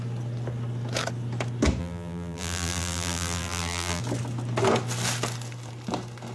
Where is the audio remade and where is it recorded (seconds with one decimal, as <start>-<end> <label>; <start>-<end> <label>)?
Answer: 0.0-1.8 recorded; 1.8-4.0 remade; 4.0-6.3 recorded